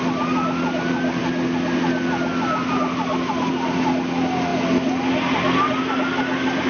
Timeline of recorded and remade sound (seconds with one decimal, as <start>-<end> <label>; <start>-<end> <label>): 0.0-6.7 recorded